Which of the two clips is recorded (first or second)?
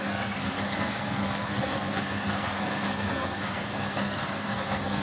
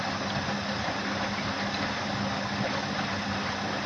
second